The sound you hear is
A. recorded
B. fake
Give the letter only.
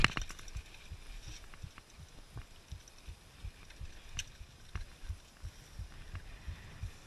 A